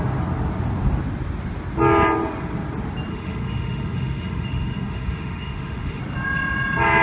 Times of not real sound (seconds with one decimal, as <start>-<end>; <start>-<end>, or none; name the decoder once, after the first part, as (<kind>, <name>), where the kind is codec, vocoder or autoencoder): 3.1-6.0 (autoencoder, DAC-VAE)